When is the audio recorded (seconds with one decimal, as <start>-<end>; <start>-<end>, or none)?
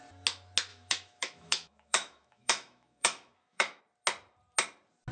0.0-0.7; 3.8-5.1